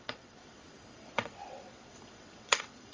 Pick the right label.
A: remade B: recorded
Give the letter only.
A